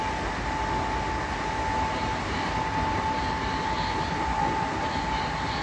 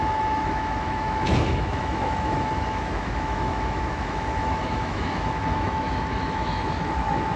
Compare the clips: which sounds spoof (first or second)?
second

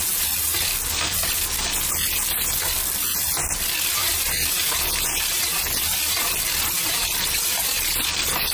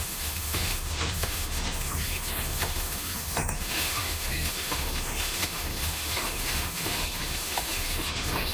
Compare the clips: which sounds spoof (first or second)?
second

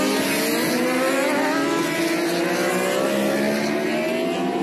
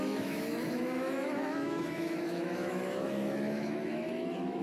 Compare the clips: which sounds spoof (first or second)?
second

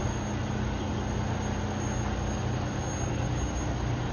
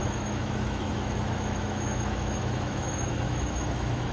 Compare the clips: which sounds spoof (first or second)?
second